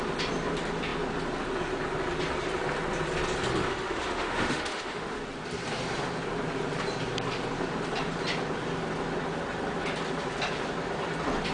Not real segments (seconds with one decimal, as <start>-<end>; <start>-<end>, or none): 3.7-5.2